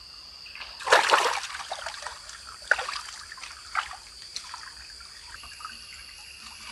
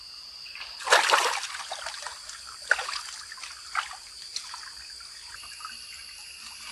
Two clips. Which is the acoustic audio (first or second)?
second